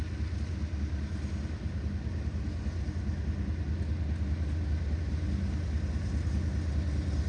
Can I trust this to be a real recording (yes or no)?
yes